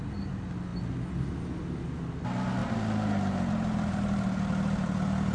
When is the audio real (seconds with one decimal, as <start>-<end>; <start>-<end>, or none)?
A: 0.0-5.3

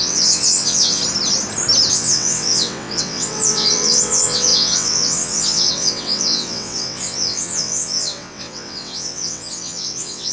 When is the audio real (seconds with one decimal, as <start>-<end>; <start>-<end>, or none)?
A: 1.0-1.9